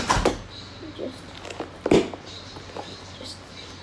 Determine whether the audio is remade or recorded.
recorded